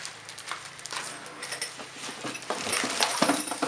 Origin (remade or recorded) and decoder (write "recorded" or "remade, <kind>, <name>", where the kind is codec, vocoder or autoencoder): recorded